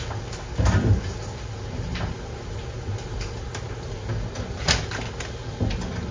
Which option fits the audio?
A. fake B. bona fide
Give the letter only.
B